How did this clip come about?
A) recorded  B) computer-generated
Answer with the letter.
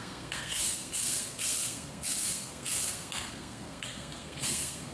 B